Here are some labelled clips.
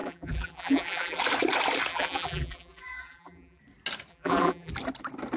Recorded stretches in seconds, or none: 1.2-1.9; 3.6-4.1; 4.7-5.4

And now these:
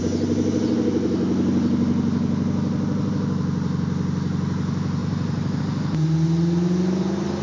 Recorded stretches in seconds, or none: 0.0-5.0; 5.6-7.4

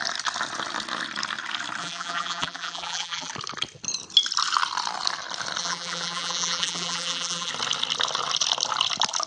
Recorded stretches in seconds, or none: 0.0-1.8; 3.3-5.6; 7.5-9.3